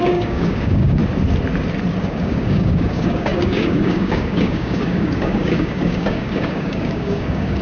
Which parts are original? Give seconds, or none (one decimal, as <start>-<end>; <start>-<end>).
1.0-2.0